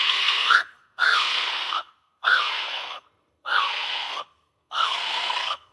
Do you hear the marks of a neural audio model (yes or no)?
yes